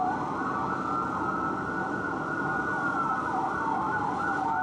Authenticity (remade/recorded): recorded